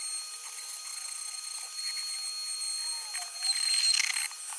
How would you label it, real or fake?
real